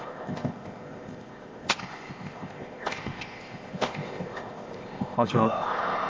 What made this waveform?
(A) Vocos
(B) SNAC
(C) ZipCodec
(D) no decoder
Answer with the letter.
C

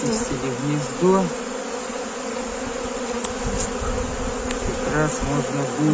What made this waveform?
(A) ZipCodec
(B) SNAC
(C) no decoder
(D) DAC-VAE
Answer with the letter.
C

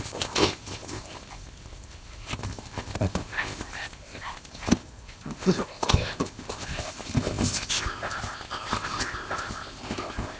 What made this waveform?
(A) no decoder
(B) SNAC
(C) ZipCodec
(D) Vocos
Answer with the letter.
C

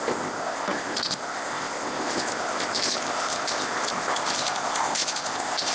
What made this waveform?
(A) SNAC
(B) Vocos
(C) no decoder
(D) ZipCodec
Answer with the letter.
D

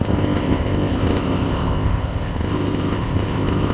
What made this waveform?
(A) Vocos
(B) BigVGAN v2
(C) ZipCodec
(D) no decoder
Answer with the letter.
C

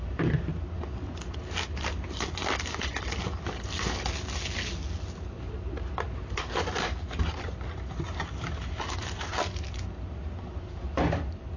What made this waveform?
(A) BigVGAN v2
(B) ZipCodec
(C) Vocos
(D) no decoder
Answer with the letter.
D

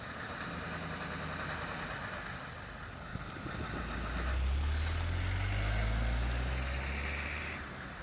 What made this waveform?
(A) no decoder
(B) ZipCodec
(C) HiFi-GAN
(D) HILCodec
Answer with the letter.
A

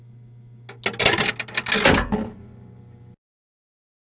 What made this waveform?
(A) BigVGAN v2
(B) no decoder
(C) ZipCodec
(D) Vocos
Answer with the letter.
B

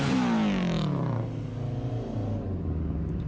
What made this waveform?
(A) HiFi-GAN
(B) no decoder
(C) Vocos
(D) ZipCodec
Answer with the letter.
B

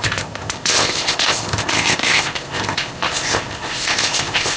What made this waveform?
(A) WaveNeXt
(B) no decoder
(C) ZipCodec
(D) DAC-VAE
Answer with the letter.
C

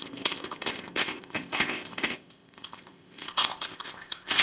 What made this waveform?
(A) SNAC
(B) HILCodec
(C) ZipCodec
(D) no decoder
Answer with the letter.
C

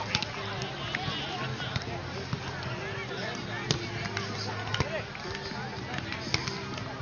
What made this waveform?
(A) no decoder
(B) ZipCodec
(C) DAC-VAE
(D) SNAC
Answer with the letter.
A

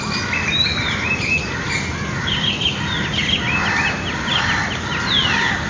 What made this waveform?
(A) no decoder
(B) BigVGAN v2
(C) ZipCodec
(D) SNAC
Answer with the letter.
A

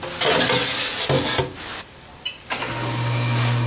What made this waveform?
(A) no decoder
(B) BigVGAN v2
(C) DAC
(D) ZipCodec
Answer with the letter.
A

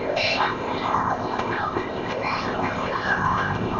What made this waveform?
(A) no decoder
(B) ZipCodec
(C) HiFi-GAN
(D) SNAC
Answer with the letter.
B